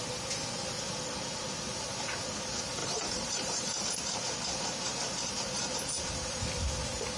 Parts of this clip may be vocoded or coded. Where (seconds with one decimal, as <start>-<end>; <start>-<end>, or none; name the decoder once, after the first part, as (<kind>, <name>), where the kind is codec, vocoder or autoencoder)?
2.8-6.4 (vocoder, BigVGAN v2)